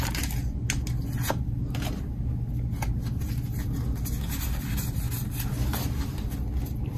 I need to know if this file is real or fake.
real